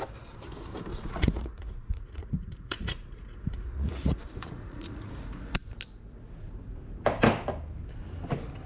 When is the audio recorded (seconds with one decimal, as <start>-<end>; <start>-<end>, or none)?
0.0-0.9; 5.6-8.7